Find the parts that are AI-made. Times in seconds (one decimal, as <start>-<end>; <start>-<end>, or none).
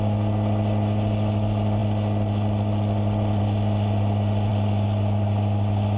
none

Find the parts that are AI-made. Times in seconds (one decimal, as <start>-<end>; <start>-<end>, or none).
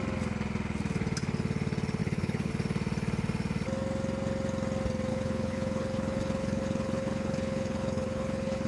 2.0-2.5; 5.1-8.7